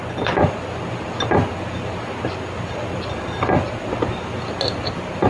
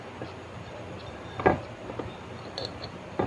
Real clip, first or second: first